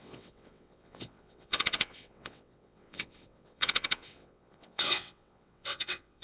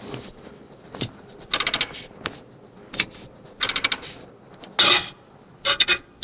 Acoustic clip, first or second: second